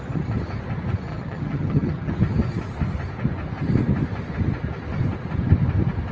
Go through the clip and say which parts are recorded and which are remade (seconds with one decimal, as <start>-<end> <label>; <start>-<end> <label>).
0.0-1.1 recorded; 1.1-2.1 remade; 2.1-6.1 recorded